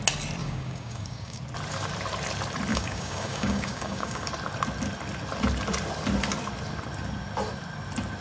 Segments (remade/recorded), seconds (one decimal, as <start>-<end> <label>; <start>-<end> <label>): 0.0-0.4 recorded; 0.4-1.4 remade; 1.4-2.7 recorded; 2.7-4.3 remade; 4.3-8.2 recorded